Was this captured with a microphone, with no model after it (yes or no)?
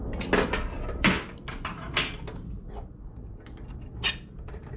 yes